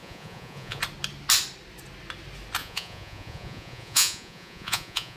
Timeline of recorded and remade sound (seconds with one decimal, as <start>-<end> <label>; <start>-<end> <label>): 0.0-0.8 remade; 0.8-2.6 recorded; 2.6-5.2 remade